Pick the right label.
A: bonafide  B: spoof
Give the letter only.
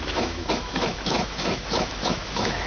B